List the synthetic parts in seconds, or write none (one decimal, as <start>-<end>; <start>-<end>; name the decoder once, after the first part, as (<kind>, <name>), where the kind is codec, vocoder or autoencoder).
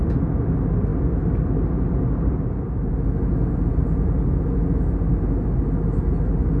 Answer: none